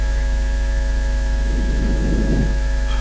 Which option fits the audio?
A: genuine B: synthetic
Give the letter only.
B